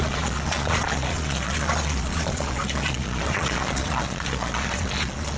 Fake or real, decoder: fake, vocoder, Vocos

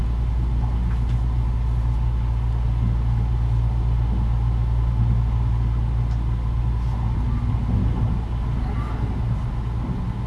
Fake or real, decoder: real